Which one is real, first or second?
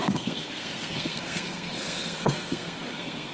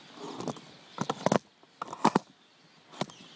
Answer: second